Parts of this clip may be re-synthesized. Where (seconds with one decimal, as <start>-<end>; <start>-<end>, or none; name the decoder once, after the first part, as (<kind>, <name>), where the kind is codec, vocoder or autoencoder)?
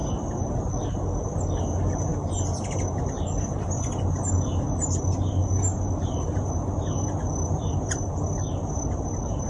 none